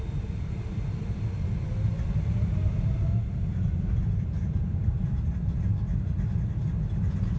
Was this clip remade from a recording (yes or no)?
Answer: yes